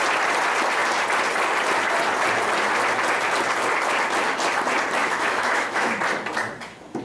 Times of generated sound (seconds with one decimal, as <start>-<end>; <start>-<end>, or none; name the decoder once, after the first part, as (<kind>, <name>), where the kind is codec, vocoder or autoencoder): 5.0-6.0 (autoencoder, DAC-VAE)